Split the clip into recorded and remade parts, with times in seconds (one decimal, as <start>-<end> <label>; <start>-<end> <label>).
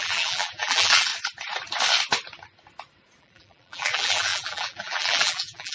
0.0-1.1 remade; 1.1-3.2 recorded; 3.2-5.7 remade